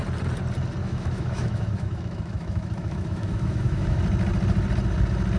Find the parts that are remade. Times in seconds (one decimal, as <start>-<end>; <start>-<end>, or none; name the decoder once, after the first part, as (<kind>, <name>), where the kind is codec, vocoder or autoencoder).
0.8-4.0 (autoencoder, DAC-VAE)